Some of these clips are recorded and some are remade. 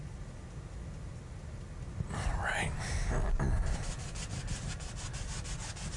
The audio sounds recorded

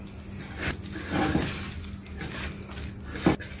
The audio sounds recorded